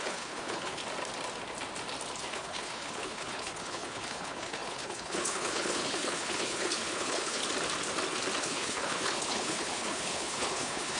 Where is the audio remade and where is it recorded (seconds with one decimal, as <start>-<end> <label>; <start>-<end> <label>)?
0.0-0.8 remade; 0.8-2.3 recorded; 2.3-7.4 remade; 7.4-8.4 recorded; 8.4-11.0 remade